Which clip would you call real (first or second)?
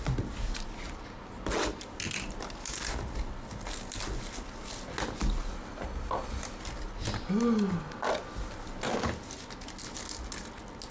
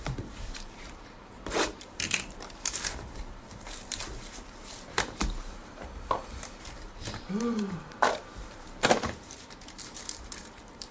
first